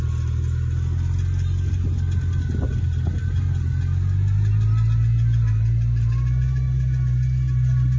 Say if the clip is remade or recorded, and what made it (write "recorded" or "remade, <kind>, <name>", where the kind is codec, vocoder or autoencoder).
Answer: recorded